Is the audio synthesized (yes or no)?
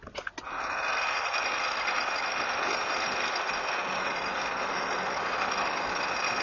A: no